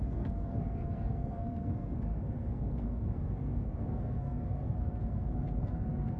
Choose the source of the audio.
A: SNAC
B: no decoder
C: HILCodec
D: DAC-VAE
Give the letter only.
A